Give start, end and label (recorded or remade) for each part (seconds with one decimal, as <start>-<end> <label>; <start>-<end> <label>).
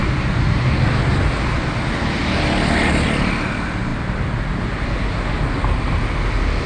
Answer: 0.0-6.7 recorded